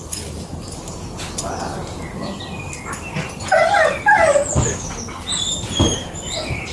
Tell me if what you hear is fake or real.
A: real